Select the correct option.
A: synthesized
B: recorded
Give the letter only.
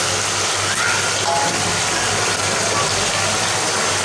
B